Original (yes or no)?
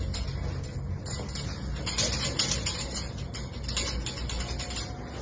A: yes